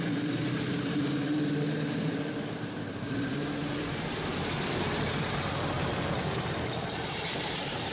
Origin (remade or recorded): remade